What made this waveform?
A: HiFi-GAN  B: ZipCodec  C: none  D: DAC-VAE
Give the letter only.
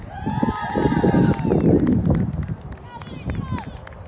C